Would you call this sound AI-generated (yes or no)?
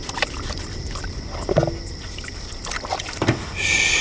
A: no